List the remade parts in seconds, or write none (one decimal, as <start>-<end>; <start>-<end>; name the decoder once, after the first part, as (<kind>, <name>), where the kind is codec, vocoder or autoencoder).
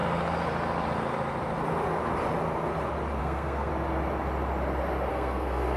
3.2-3.7 (codec, SNAC); 5.1-5.8